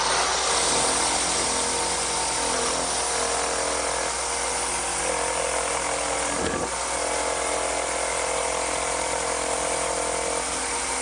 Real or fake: real